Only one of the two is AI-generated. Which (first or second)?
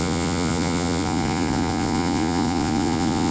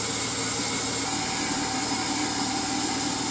first